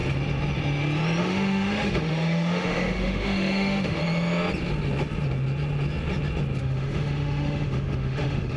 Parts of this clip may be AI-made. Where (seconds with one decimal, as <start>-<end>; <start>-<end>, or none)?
1.2-4.0; 6.6-8.6